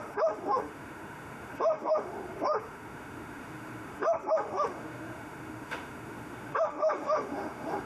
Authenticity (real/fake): fake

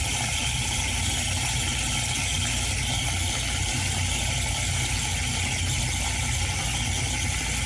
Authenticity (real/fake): real